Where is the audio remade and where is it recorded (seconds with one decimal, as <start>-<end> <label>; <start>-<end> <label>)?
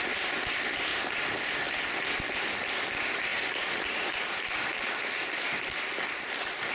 0.0-0.9 remade; 0.9-2.8 recorded; 2.8-3.3 remade; 3.3-4.0 recorded; 4.0-6.7 remade